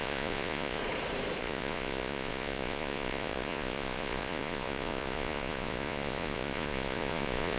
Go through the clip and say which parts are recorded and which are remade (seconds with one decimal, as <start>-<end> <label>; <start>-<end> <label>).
0.0-0.8 remade; 0.8-1.4 recorded; 1.4-7.6 remade